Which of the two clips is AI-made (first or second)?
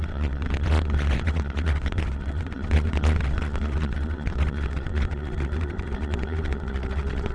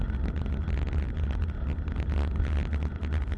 first